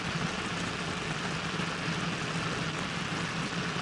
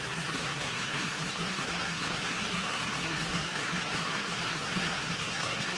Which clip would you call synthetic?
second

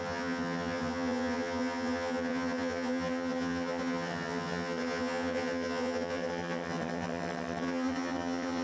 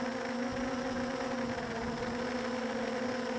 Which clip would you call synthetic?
first